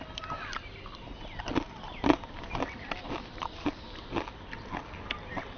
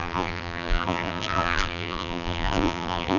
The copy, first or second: second